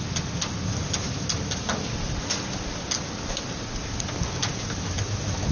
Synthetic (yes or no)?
no